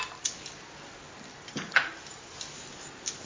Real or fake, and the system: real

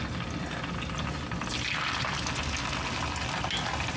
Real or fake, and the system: real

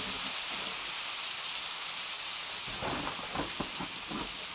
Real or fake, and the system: real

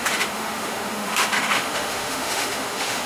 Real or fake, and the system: fake, autoencoder, DAC-VAE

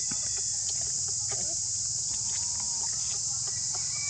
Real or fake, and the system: real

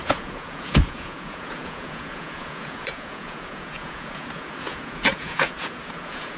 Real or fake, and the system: fake, vocoder, Vocos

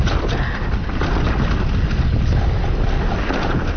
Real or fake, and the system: real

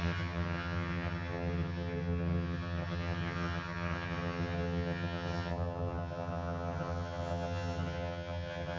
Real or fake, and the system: fake, vocoder, HiFi-GAN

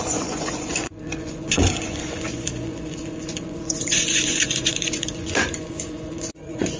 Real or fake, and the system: fake, vocoder, Vocos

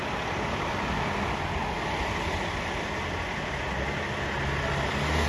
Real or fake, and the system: real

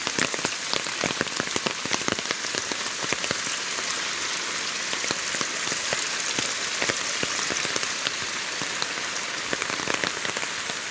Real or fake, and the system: real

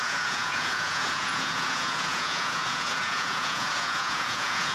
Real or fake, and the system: fake, vocoder, Vocos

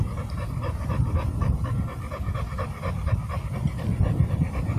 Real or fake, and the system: real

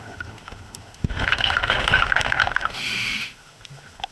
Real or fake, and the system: fake, autoencoder, DAC-VAE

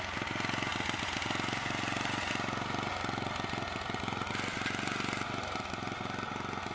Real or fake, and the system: real